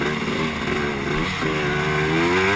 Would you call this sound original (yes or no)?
yes